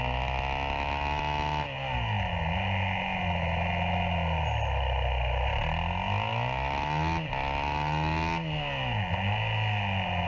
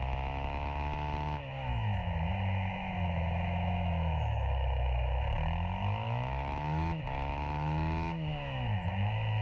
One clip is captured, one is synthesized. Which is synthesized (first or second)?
second